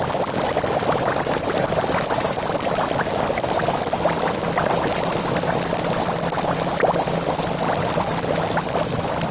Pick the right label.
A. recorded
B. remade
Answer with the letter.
A